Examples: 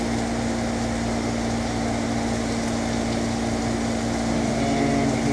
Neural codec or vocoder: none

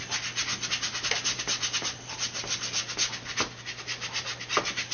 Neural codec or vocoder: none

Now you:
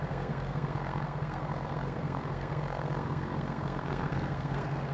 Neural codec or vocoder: codec, SNAC